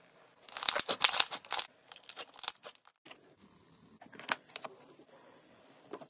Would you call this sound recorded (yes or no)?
yes